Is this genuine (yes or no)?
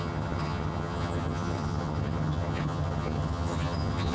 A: no